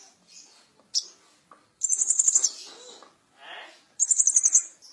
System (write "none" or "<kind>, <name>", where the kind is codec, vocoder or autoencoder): none